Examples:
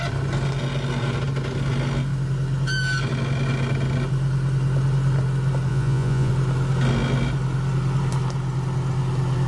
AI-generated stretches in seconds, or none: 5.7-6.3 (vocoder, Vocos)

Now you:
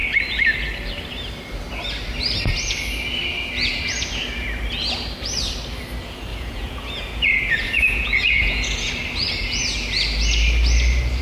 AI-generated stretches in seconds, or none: 6.3-8.9 (vocoder, Vocos)

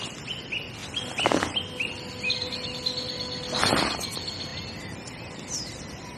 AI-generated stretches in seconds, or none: none

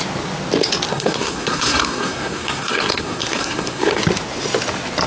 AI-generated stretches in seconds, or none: 0.9-4.0 (codec, SNAC)

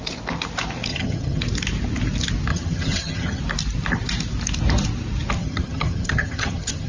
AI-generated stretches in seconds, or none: 0.9-1.4 (vocoder, HiFi-GAN); 2.5-3.4; 5.4-6.9

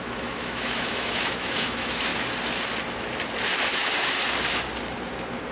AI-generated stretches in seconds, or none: 0.0-2.1 (autoencoder, DAC-VAE)

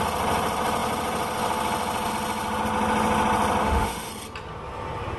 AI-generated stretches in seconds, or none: 3.6-4.1 (autoencoder, DAC-VAE)

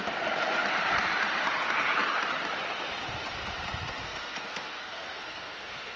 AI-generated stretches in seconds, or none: 4.0-6.0 (codec, SNAC)